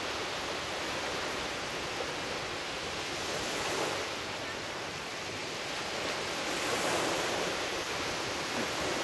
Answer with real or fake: real